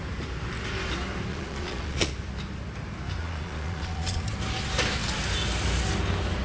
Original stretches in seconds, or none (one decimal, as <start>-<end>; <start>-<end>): 0.0-1.3; 2.1-3.2; 4.2-6.4